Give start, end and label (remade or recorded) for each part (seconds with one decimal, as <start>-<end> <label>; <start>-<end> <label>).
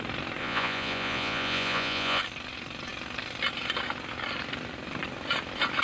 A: 0.0-0.4 recorded; 0.4-2.2 remade; 2.2-5.8 recorded